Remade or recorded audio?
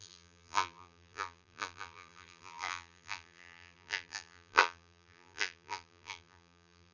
remade